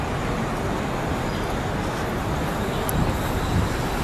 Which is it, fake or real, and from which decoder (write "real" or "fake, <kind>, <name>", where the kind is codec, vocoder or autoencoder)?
real